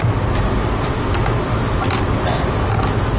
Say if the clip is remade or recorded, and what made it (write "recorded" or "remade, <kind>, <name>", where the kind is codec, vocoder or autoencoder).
recorded